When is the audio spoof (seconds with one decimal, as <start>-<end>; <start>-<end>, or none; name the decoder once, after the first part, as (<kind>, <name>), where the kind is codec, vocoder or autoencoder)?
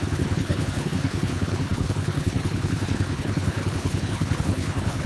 0.0-5.1 (codec, HILCodec)